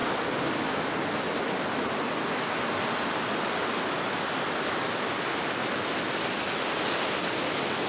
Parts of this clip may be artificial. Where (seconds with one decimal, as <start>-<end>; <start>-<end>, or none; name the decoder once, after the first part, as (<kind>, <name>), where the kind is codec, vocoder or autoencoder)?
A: none